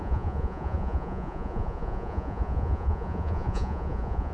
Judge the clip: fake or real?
fake